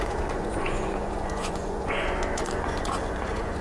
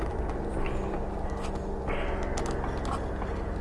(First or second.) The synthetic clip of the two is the first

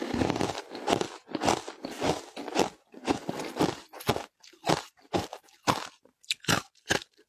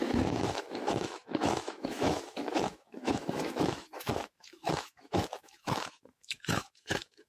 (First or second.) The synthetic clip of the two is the second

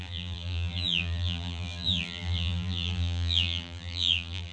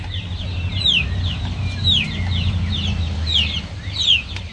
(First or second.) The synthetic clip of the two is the first